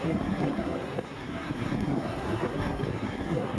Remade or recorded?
remade